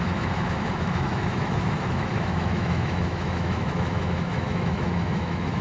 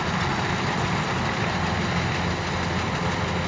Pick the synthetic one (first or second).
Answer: first